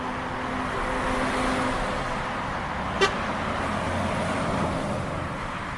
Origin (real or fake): real